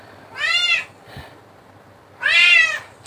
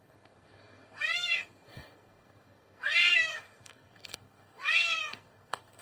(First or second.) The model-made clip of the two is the second